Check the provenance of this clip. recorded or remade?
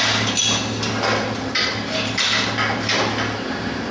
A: recorded